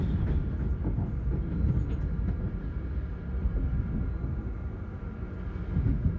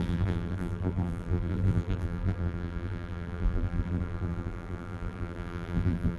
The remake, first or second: second